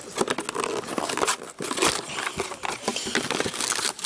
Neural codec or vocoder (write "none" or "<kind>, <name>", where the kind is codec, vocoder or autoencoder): none